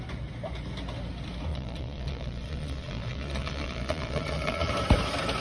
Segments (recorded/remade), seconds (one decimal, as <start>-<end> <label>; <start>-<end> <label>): 0.0-1.5 recorded; 1.5-4.7 remade; 4.7-5.4 recorded